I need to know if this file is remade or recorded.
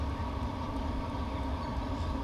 recorded